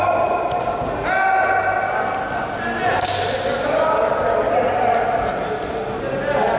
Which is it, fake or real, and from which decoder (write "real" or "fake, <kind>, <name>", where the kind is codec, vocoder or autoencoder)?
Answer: real